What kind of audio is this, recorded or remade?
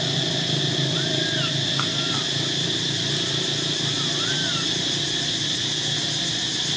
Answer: recorded